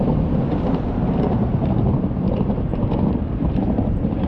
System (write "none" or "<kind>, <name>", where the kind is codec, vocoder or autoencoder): vocoder, BigVGAN v2